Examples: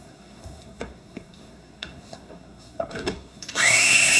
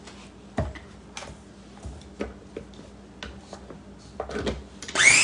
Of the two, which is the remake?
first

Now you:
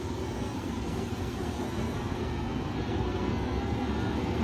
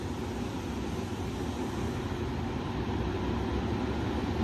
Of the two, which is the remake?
first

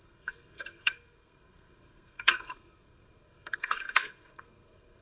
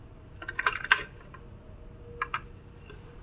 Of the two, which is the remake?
first